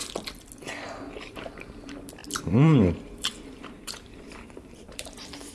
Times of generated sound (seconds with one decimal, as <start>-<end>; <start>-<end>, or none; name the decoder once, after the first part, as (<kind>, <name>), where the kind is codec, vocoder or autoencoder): 1.2-5.5 (vocoder, BigVGAN v2)